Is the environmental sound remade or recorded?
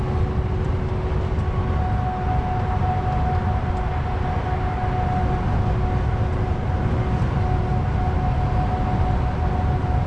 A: recorded